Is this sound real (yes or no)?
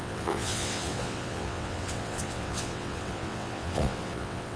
no